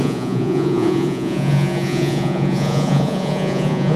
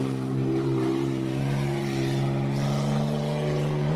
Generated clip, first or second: first